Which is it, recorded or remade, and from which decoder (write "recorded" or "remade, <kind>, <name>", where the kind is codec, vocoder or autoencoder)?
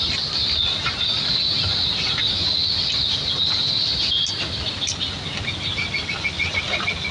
recorded